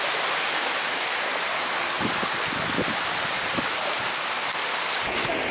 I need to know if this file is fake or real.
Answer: real